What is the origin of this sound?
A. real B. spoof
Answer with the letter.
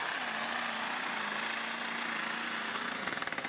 A